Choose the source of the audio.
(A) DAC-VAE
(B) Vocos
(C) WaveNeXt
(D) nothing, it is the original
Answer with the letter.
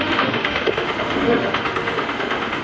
A